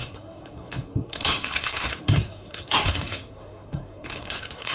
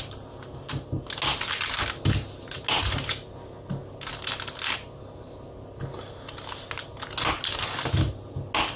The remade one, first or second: first